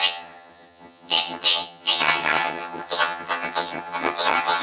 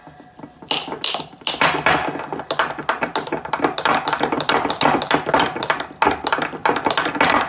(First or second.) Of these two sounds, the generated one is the first